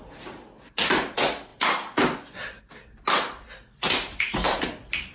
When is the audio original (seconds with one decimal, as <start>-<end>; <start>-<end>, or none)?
0.0-5.1